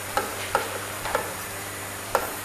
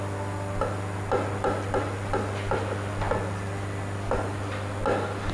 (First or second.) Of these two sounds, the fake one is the first